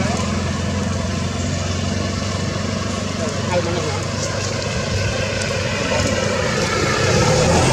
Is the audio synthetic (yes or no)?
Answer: no